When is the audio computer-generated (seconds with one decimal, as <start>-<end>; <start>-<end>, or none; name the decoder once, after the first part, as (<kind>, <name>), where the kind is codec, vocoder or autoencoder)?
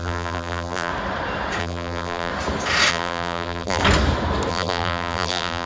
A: 0.0-0.9 (vocoder, BigVGAN v2); 1.6-2.3; 2.9-3.8; 4.5-5.7